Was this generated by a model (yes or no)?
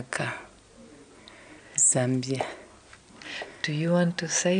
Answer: no